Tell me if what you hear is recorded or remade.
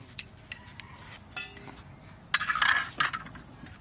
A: recorded